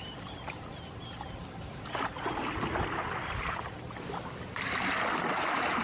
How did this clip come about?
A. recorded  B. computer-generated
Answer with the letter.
A